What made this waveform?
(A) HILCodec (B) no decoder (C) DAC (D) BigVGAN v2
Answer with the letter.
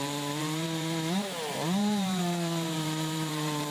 D